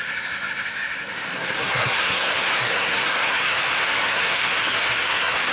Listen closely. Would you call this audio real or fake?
fake